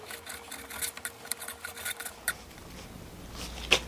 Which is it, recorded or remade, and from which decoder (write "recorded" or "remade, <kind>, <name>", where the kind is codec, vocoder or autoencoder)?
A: recorded